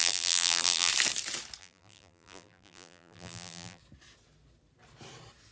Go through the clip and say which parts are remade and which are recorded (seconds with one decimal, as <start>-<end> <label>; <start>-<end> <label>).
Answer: 0.0-0.9 remade; 0.9-1.6 recorded; 1.6-3.8 remade; 3.8-5.5 recorded